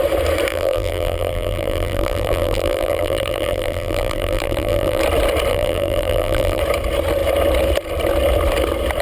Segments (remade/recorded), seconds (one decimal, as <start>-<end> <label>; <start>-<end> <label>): 0.0-0.5 recorded; 0.5-5.0 remade; 5.0-5.5 recorded; 5.5-6.6 remade; 6.6-9.0 recorded